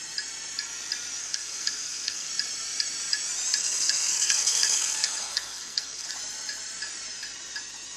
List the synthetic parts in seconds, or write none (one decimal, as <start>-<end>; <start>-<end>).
1.2-2.3; 3.6-6.1